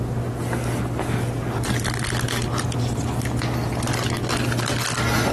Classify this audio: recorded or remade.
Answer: recorded